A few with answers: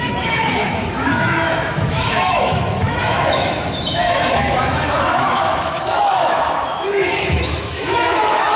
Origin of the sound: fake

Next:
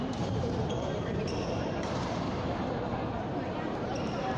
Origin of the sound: fake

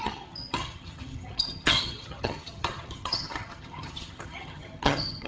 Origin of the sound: fake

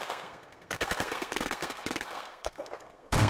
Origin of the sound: fake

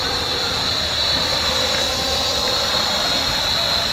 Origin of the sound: real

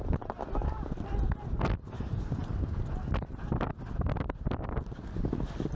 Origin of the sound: real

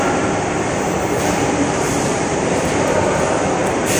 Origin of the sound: fake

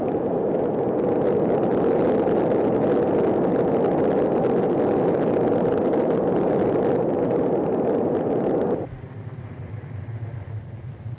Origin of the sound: fake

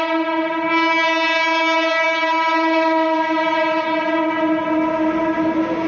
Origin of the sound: real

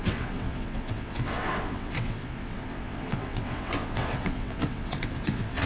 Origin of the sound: fake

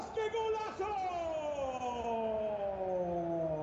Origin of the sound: real